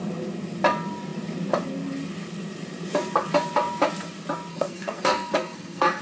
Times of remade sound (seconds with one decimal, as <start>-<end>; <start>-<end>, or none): 4.5-6.0